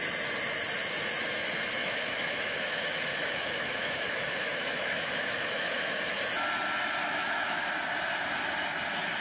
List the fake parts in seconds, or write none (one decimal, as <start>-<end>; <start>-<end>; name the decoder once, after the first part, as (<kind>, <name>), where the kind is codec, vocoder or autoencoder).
1.8-6.0 (autoencoder, DAC-VAE); 7.0-7.6